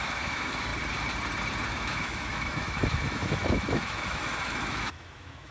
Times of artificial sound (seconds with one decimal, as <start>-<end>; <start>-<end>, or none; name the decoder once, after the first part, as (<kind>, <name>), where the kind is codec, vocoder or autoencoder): 0.0-0.7 (autoencoder, DAC-VAE); 1.7-5.5